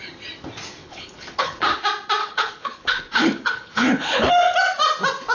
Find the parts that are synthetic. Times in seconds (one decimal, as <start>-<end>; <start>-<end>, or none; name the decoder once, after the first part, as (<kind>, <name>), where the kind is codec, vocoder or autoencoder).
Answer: 0.8-1.8 (codec, HILCodec); 2.2-4.3